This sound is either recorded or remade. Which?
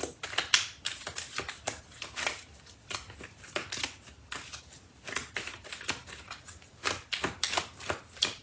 recorded